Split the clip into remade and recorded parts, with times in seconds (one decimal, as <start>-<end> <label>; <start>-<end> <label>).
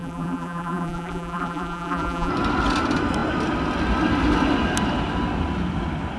0.0-2.3 remade; 2.3-6.2 recorded